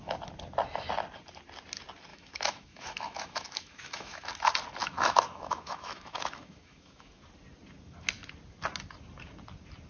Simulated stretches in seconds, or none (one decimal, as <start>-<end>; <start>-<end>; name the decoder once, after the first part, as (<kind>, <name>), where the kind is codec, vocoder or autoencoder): 2.1-4.3 (autoencoder, DAC-VAE); 4.8-7.2